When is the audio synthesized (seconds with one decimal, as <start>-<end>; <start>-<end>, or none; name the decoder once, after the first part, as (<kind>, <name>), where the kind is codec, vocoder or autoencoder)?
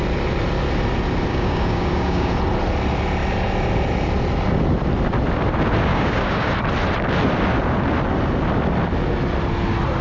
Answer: 1.3-2.3 (codec, DAC); 5.9-6.5